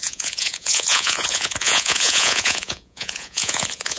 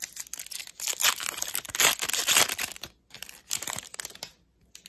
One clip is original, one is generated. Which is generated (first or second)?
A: first